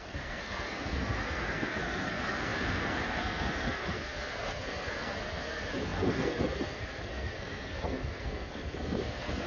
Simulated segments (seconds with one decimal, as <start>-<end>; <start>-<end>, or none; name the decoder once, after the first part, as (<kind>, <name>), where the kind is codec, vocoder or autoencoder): 0.0-9.5 (codec, SNAC)